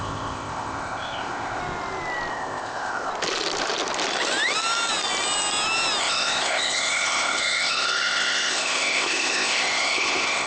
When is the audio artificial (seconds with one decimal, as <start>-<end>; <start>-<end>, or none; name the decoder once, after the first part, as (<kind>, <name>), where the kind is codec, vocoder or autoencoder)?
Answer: 0.0-1.6 (codec, ZipCodec); 2.3-3.1; 6.0-10.5